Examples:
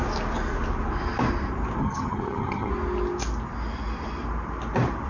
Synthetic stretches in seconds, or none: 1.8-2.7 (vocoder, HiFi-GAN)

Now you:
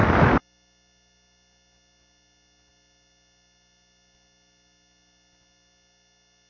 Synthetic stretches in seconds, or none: none

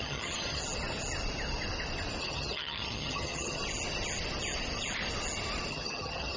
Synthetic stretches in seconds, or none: 0.0-0.6 (vocoder, HiFi-GAN); 2.2-3.6; 5.7-6.4

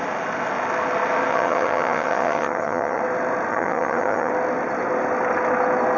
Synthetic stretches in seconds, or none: 1.3-3.0 (vocoder, HiFi-GAN); 3.5-4.3

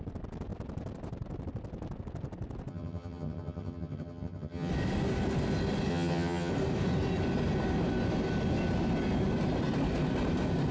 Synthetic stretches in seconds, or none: 2.7-4.7 (vocoder, HiFi-GAN); 5.9-6.5